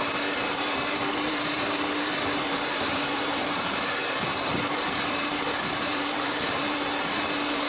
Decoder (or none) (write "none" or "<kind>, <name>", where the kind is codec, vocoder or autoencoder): vocoder, BigVGAN v2